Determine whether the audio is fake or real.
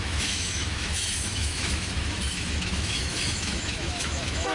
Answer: fake